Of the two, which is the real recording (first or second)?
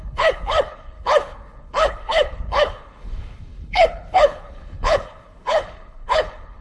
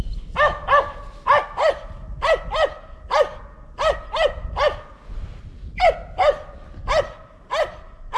second